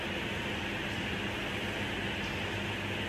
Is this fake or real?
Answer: real